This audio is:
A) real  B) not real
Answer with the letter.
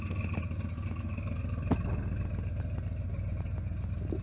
A